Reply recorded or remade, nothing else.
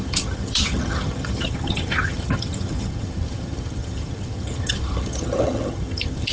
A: remade